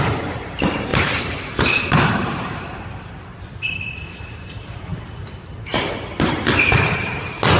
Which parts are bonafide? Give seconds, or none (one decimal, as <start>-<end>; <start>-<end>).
0.0-0.9; 3.4-7.6